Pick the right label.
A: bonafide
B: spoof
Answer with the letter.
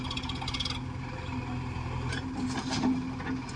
A